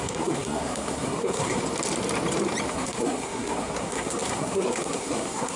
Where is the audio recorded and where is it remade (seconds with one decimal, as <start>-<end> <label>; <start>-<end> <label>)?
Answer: 0.0-1.6 remade; 1.6-2.7 recorded; 2.7-5.6 remade